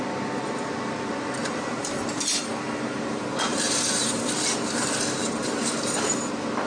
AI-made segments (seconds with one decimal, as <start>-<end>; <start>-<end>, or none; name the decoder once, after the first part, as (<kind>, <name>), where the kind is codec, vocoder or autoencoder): 1.4-2.5 (vocoder, BigVGAN v2); 3.5-4.8; 5.2-5.7